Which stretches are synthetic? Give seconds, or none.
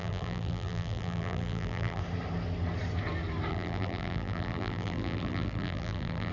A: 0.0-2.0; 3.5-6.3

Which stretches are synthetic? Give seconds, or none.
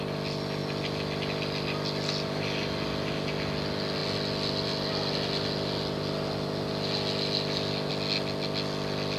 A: none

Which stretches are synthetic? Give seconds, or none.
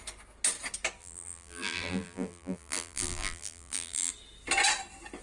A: 1.0-4.1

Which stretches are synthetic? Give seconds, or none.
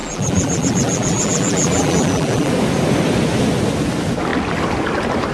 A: 0.0-2.5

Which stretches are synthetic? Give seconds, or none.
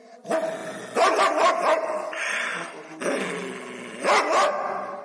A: none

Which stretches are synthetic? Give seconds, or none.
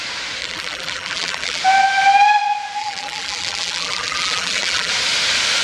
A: 0.4-1.6; 2.8-4.9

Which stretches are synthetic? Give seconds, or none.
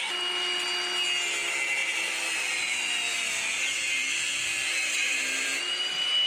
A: 1.8-5.6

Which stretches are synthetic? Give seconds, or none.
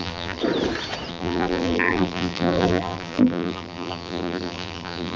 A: 0.0-0.4; 1.1-5.2